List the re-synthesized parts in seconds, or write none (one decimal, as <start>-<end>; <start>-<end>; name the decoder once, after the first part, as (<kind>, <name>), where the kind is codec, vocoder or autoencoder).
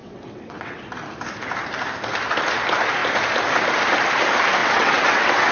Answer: 0.0-0.8 (vocoder, WaveNeXt); 4.6-5.5